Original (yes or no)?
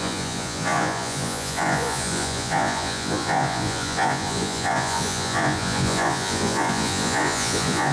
no